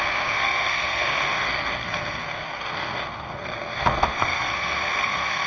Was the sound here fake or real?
fake